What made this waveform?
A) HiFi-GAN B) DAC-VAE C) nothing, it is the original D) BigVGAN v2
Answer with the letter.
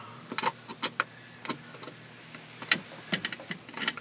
C